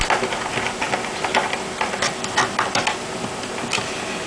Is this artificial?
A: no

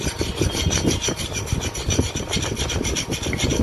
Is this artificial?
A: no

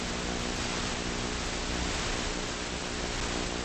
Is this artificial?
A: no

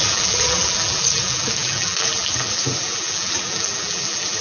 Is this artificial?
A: yes